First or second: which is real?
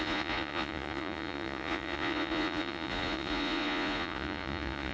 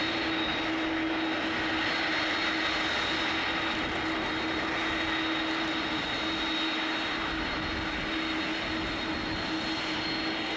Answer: second